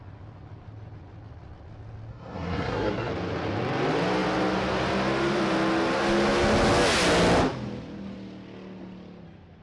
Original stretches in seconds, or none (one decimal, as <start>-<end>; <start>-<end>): 0.0-2.1; 3.1-9.6